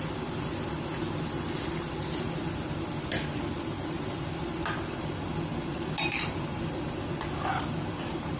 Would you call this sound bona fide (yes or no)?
yes